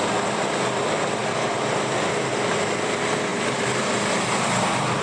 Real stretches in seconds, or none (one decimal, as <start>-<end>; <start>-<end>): 0.0-5.0